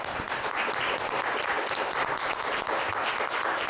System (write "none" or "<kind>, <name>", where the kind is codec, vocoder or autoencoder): none